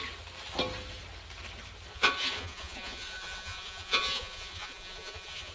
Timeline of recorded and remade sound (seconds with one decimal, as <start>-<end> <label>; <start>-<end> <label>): 0.0-1.9 recorded; 1.9-5.5 remade